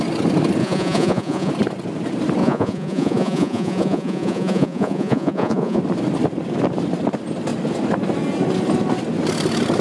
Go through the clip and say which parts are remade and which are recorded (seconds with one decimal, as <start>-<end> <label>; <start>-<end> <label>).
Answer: 0.0-0.6 recorded; 0.6-1.5 remade; 1.5-2.4 recorded; 2.4-5.8 remade; 5.8-9.8 recorded